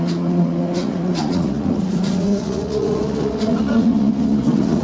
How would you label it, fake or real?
fake